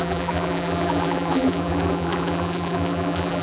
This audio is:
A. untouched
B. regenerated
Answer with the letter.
B